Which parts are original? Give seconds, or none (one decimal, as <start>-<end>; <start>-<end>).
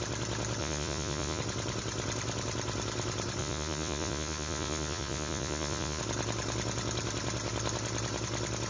0.0-0.6; 1.4-3.4; 6.0-8.7